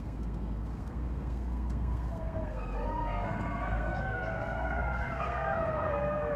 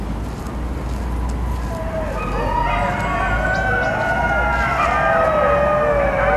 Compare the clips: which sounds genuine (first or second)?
second